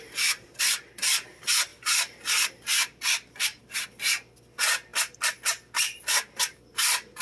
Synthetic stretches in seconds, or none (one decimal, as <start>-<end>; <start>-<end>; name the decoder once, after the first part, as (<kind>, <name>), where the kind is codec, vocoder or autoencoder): none